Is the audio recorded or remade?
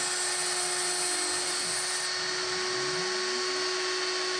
recorded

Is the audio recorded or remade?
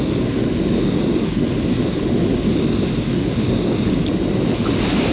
recorded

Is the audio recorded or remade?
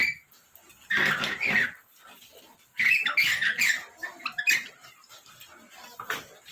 recorded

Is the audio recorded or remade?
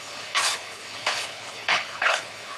remade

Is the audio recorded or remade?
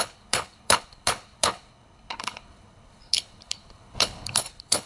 remade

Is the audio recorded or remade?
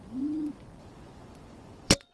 remade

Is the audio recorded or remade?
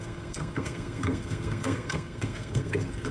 remade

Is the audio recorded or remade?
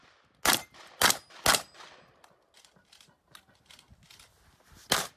recorded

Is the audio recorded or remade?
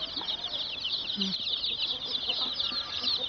recorded